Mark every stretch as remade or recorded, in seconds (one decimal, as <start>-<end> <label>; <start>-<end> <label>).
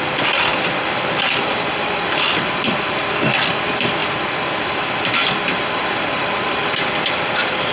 0.0-0.5 remade; 0.5-1.4 recorded; 1.4-4.0 remade; 4.0-4.8 recorded; 4.8-7.7 remade